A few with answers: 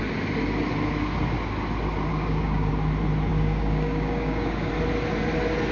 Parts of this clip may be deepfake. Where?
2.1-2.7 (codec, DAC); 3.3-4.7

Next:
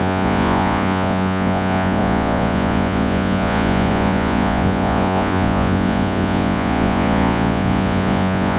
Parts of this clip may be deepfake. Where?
0.0-8.6 (vocoder, Vocos)

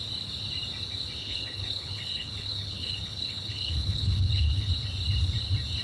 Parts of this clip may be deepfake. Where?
1.2-4.7 (codec, HILCodec)

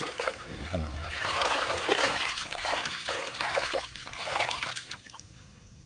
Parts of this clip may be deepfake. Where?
0.0-5.9 (codec, SNAC)

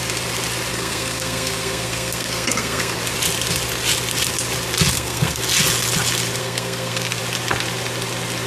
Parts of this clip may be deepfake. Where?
0.7-3.0 (codec, SNAC); 4.9-5.4; 6.4-7.2

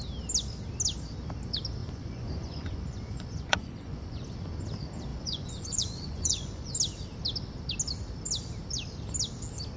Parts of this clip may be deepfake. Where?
1.8-4.2 (vocoder, Vocos); 5.1-6.7

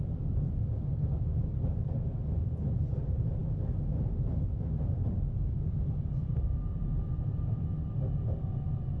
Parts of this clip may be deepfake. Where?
none

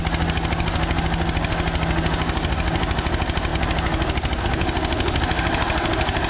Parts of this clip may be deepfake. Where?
none